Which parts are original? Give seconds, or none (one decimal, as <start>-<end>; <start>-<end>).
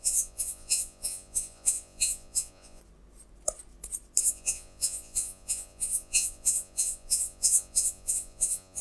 2.8-4.2